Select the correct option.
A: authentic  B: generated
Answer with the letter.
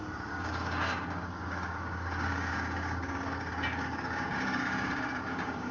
B